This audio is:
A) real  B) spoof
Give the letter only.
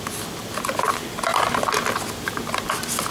A